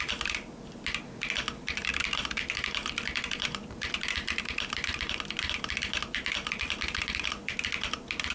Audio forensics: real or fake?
fake